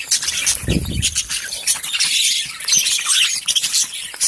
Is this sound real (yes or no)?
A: yes